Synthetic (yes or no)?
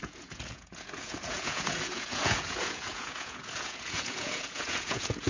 yes